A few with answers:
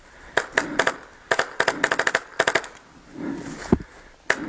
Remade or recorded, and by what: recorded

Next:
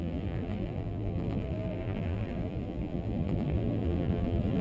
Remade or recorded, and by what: remade, vocoder, BigVGAN v2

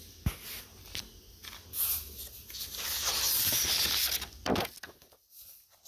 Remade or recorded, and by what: recorded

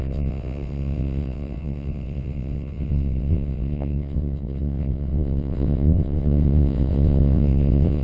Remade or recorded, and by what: remade, vocoder, WaveNeXt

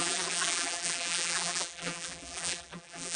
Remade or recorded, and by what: remade, vocoder, BigVGAN v2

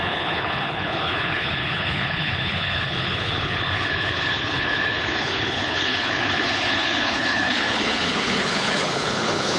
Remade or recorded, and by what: remade, codec, HILCodec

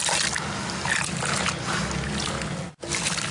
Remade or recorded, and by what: recorded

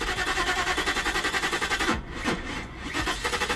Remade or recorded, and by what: remade, vocoder, Vocos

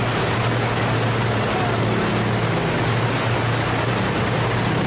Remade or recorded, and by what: recorded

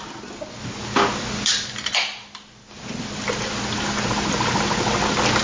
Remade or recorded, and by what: recorded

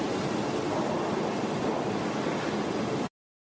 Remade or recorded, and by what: recorded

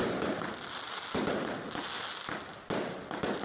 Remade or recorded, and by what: recorded